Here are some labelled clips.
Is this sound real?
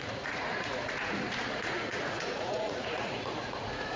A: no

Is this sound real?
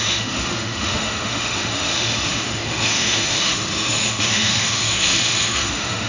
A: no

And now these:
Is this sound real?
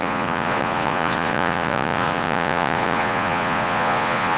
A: no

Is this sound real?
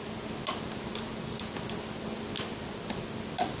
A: yes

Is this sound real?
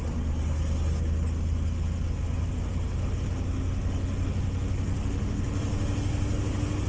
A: yes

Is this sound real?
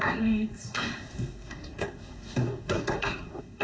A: no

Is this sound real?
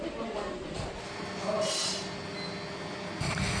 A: yes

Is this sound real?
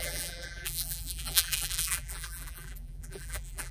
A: no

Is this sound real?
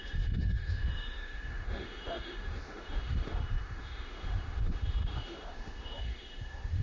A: no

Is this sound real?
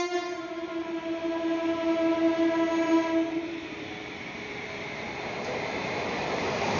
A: no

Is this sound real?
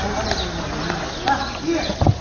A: yes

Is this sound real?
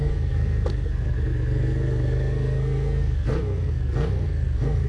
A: no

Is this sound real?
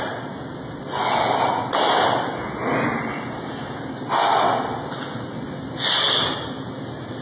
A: yes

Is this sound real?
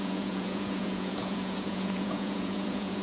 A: no